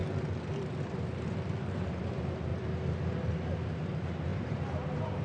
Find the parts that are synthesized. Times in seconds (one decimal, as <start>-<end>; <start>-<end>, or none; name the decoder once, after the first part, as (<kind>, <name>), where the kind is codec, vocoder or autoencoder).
0.8-2.5 (vocoder, BigVGAN v2); 3.7-5.2